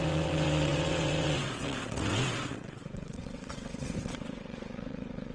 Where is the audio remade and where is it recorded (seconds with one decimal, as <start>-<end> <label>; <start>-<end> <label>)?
0.0-5.3 remade